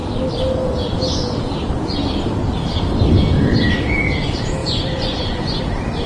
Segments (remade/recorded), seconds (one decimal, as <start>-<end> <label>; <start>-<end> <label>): 0.0-4.6 recorded; 4.6-5.6 remade; 5.6-6.1 recorded